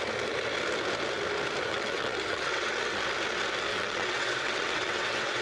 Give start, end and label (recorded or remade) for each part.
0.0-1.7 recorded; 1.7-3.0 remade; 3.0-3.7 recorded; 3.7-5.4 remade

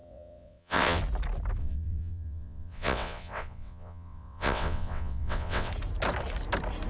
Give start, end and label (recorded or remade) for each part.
0.0-1.0 remade; 1.0-1.6 recorded; 1.6-5.7 remade; 5.7-6.9 recorded